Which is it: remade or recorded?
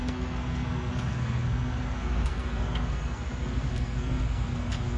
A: remade